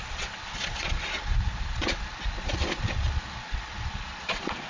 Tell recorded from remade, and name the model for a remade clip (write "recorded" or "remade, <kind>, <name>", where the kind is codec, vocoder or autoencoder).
remade, vocoder, Vocos